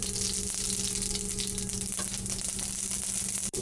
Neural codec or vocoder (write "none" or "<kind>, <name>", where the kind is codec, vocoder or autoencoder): none